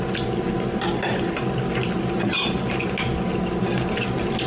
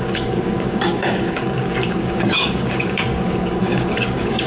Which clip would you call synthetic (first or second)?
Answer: second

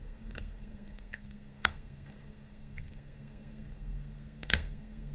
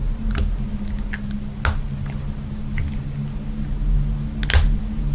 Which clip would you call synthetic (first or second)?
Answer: first